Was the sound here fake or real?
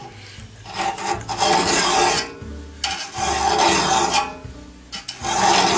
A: real